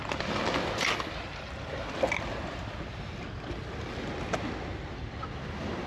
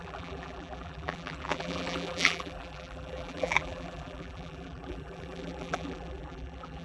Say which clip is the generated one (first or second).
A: second